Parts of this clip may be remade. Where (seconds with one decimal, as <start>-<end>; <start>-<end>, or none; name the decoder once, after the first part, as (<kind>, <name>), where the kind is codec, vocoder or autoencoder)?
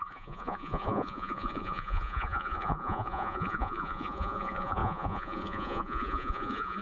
0.0-6.8 (vocoder, Vocos)